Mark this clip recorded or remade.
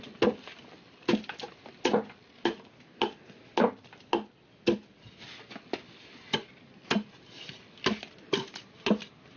recorded